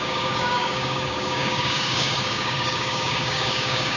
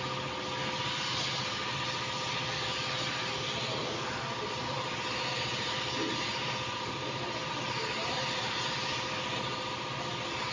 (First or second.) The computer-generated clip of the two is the first